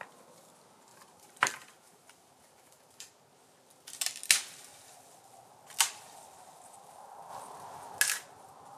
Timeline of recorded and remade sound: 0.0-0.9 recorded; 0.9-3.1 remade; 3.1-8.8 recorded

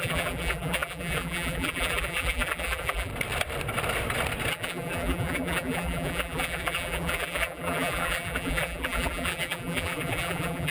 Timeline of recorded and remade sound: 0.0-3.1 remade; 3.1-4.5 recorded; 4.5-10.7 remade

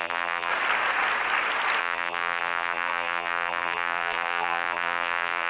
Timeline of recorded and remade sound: 0.0-0.5 remade; 0.5-1.8 recorded; 1.8-5.5 remade

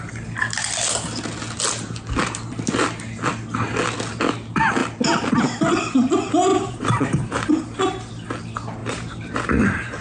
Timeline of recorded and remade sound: 0.0-6.5 recorded; 6.5-7.5 remade; 7.5-8.8 recorded; 8.8-10.0 remade